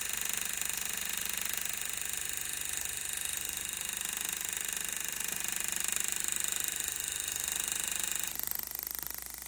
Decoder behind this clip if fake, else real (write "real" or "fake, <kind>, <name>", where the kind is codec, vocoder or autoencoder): real